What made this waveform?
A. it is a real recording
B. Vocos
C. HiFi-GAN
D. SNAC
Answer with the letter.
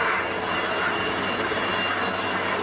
A